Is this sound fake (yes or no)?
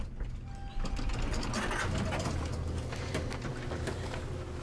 no